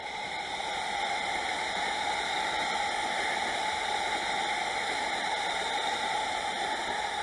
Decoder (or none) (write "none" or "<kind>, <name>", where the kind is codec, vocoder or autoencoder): none